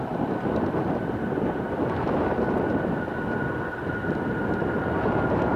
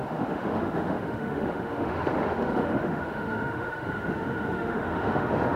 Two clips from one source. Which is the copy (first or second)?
second